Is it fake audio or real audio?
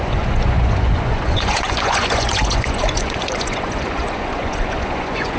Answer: fake